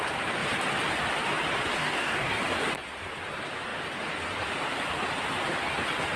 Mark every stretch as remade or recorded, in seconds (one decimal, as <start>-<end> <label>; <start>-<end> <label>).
0.0-1.8 recorded; 1.8-2.4 remade; 2.4-6.2 recorded